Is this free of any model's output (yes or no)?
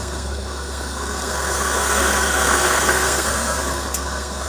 no